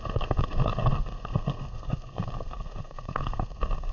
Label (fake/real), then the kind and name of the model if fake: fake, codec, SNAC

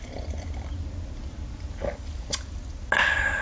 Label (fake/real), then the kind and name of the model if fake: real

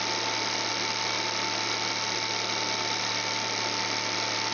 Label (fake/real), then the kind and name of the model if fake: real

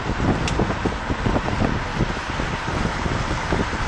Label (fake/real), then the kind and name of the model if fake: real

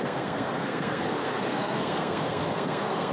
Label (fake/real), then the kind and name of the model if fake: fake, codec, SNAC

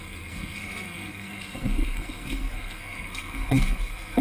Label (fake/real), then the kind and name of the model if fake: fake, codec, SNAC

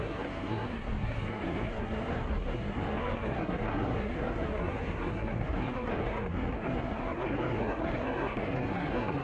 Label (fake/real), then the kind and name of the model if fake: fake, codec, SNAC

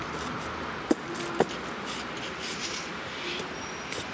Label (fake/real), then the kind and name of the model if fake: real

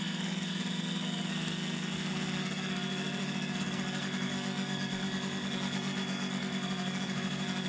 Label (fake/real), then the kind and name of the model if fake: fake, codec, SNAC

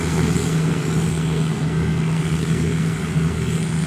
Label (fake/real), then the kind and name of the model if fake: fake, codec, SNAC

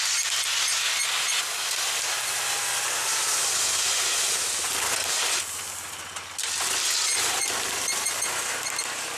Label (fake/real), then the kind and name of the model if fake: real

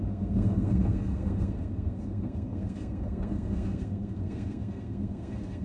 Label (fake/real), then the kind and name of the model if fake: fake, codec, SNAC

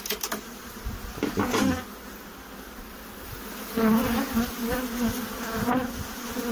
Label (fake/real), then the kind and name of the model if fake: real